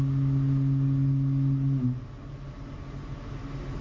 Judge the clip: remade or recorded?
recorded